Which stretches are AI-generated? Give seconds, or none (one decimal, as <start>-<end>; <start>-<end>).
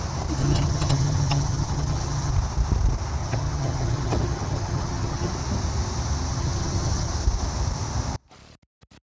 0.4-2.3; 3.2-5.3; 6.3-7.1